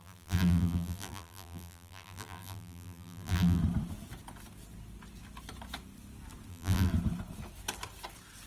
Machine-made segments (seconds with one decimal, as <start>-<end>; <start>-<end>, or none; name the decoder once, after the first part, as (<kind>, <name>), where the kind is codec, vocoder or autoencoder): 0.0-3.6 (vocoder, BigVGAN v2); 6.5-6.9